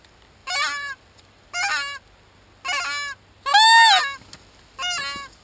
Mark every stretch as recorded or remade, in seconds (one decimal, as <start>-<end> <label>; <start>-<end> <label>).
0.0-0.4 recorded; 0.4-1.5 remade; 1.5-5.4 recorded